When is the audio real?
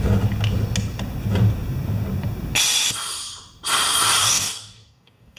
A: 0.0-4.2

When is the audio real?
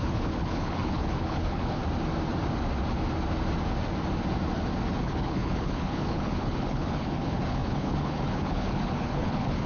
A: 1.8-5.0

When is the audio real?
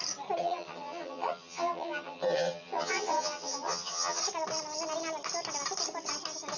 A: 0.0-0.4; 4.2-6.6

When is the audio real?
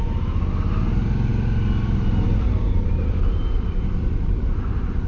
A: 0.0-5.1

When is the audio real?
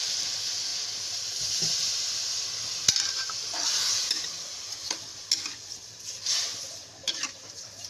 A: 0.0-7.0